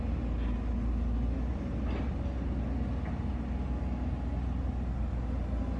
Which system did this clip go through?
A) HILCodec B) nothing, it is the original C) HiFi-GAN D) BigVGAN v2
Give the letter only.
B